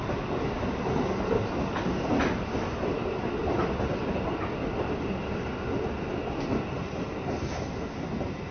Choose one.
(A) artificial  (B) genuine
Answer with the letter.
B